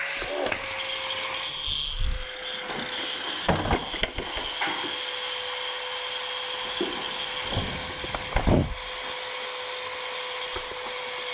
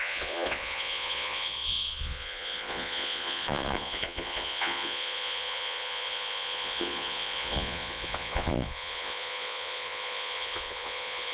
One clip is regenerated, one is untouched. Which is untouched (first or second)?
first